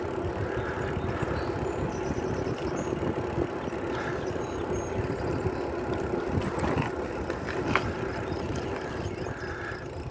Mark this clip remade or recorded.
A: recorded